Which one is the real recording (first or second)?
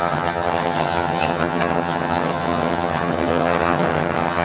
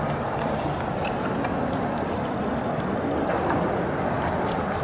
second